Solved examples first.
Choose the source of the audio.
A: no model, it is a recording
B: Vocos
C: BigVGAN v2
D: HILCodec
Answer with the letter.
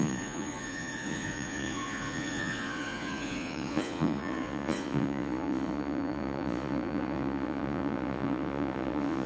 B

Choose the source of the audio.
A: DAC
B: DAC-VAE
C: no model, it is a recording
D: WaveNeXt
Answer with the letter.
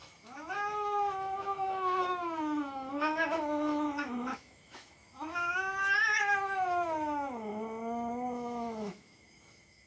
B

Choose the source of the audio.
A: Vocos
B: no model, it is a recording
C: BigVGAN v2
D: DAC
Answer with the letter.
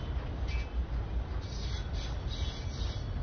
B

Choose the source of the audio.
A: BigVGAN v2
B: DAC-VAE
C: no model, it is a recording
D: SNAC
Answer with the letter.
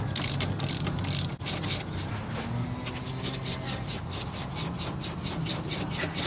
C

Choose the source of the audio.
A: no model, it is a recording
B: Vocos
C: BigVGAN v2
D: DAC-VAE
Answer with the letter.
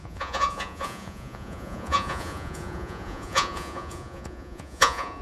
B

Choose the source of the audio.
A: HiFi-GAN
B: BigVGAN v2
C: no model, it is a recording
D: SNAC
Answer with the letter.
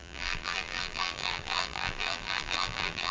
B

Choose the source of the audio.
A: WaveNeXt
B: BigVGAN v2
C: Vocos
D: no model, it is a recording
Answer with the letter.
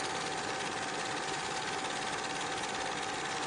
D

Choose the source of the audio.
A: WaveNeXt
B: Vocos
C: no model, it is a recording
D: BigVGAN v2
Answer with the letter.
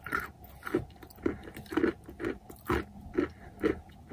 C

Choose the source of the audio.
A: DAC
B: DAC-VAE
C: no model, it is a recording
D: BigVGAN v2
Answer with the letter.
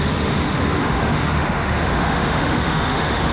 B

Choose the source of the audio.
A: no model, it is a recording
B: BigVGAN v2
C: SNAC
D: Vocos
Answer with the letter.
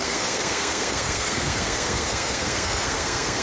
C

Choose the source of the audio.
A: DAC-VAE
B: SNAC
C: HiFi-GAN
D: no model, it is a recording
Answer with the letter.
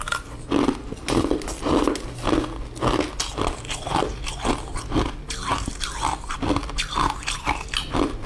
D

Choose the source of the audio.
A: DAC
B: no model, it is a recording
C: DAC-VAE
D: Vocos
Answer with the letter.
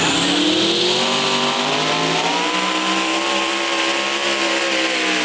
B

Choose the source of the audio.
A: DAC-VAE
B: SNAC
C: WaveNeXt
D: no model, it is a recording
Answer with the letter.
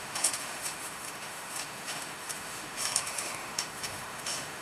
A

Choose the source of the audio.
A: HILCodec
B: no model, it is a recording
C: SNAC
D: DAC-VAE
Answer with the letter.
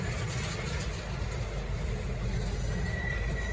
B